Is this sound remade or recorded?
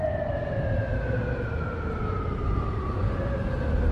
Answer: recorded